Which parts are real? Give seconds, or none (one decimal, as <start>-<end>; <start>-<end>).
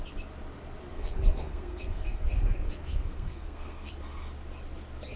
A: 0.0-0.9; 3.9-5.2